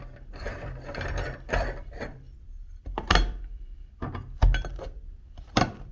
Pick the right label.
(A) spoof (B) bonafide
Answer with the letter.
A